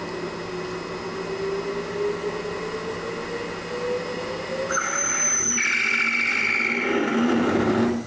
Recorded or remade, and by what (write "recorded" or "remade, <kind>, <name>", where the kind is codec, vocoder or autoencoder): recorded